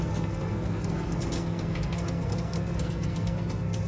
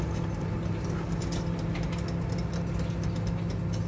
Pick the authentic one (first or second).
second